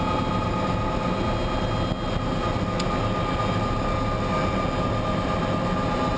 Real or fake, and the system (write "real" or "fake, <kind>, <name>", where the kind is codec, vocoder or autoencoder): real